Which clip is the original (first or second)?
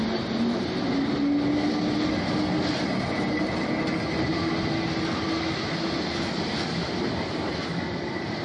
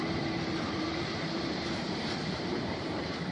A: first